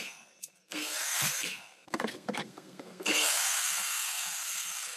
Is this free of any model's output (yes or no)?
no